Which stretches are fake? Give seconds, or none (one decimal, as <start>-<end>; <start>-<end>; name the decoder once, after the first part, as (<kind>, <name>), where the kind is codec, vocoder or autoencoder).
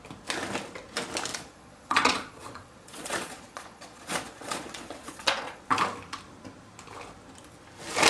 1.3-5.6 (vocoder, Vocos)